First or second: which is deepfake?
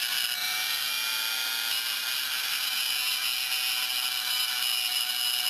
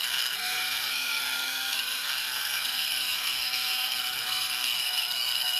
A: second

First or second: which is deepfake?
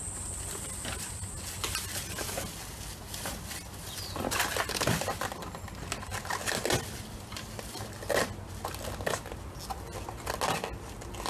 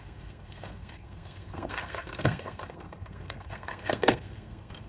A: second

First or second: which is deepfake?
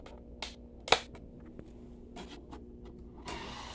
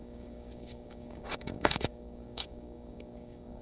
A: second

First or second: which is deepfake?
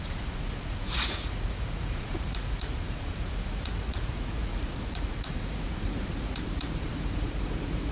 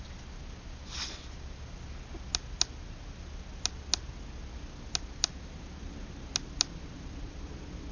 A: first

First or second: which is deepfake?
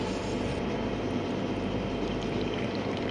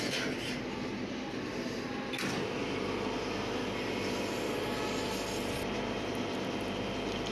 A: first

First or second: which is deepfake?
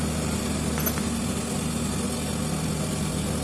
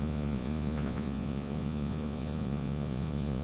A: second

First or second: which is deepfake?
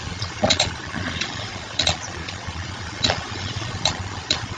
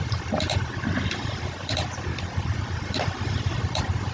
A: first